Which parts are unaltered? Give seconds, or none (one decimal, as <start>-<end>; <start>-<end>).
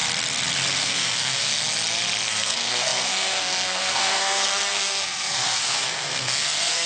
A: 0.0-0.8; 1.5-2.3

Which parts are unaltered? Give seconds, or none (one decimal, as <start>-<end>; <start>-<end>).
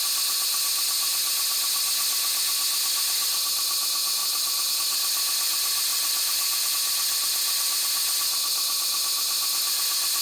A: 0.0-4.2; 4.7-5.9; 6.7-10.2